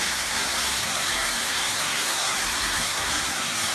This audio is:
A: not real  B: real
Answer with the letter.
A